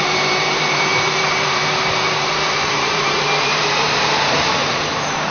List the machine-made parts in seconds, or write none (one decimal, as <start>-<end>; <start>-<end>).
0.0-5.3